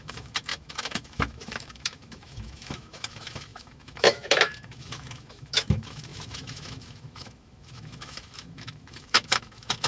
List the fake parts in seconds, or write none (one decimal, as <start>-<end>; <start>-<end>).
0.0-9.9